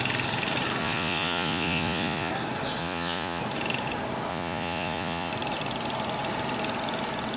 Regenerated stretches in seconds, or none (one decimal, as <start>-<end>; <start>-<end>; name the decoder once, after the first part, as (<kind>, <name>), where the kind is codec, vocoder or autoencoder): 0.8-2.3 (vocoder, Vocos); 2.8-3.4; 4.3-5.3